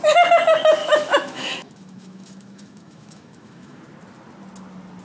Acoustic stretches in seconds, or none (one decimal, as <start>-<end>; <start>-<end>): 0.0-0.8; 3.8-5.0